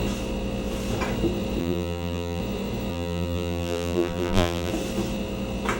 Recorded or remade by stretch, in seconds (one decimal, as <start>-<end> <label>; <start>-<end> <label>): 0.0-1.6 recorded; 1.6-2.4 remade; 2.4-2.9 recorded; 2.9-4.7 remade; 4.7-5.8 recorded